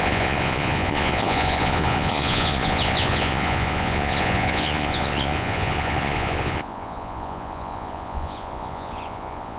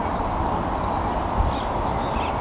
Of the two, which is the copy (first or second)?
first